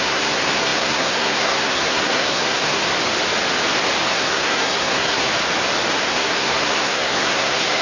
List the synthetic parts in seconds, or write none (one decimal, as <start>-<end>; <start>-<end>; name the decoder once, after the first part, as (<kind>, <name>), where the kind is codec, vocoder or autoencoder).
0.0-2.8 (codec, SNAC); 4.1-5.3; 6.1-7.8